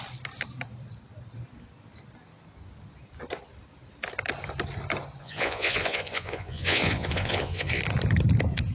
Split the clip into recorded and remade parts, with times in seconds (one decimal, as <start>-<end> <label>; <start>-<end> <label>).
0.0-5.2 recorded; 5.2-7.8 remade; 7.8-8.7 recorded